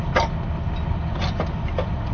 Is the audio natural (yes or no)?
yes